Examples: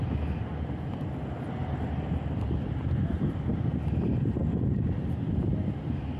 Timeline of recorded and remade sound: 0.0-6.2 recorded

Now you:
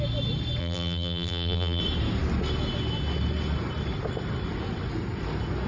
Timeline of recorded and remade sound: 0.0-0.6 recorded; 0.6-1.8 remade; 1.8-5.7 recorded

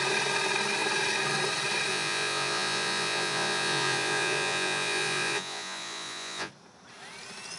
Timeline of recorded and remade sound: 0.0-1.9 recorded; 1.9-6.5 remade; 6.5-7.6 recorded

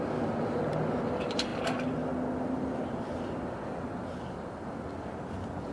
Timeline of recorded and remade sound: 0.0-5.7 recorded

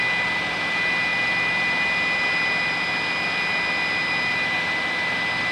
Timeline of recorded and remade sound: 0.0-5.5 recorded

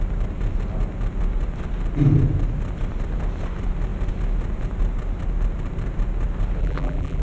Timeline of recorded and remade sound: 0.0-6.6 recorded; 6.6-7.2 remade